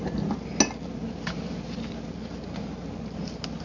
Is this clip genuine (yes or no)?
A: yes